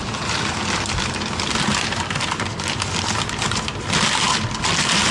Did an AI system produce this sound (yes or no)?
no